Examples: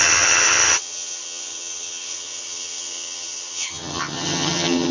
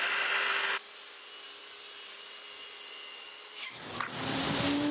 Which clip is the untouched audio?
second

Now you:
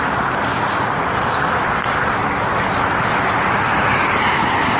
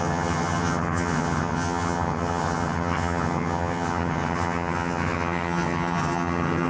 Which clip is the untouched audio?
first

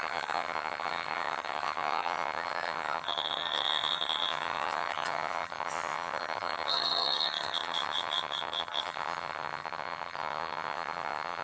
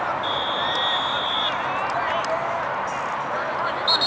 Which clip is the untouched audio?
second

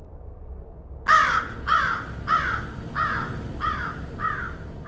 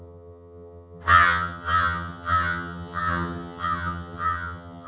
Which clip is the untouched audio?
first